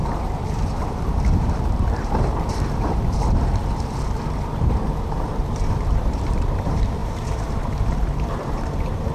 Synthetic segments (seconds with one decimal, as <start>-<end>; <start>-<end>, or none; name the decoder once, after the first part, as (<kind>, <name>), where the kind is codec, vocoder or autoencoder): 0.0-9.1 (vocoder, BigVGAN v2)